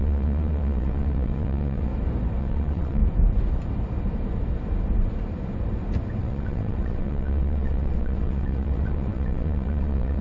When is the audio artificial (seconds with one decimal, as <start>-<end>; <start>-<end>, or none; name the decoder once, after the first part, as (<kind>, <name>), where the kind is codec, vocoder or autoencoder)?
0.0-1.9 (vocoder, WaveNeXt); 2.4-3.0; 6.2-10.2